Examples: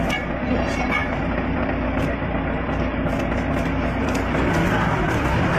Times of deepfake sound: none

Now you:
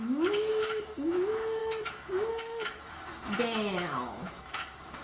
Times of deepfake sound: 0.0-5.0 (autoencoder, DAC-VAE)

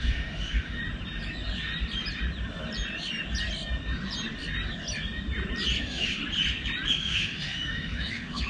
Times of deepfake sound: 0.0-0.8 (autoencoder, DAC-VAE); 5.8-6.2; 6.9-8.5

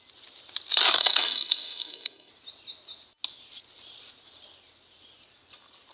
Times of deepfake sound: 1.0-2.3 (codec, SNAC)

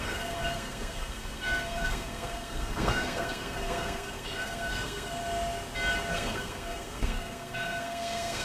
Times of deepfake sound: 0.0-5.2 (codec, SNAC); 6.1-8.4